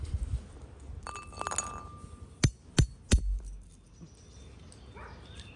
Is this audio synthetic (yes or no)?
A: no